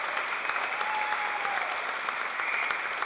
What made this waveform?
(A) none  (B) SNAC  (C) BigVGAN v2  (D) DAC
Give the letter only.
A